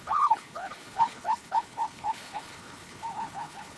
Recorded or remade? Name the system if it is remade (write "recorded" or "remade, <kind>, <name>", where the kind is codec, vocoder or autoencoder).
remade, codec, HILCodec